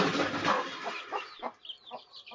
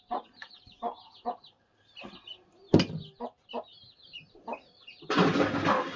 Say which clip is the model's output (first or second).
first